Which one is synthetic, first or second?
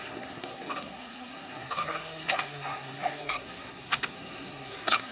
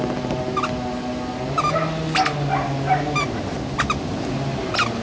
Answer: first